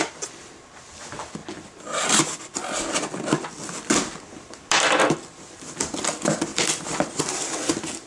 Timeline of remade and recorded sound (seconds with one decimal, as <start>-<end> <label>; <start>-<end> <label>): 0.0-8.1 recorded